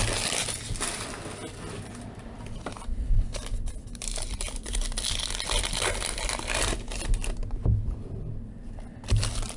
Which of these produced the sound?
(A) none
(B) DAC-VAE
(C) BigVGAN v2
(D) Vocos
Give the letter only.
A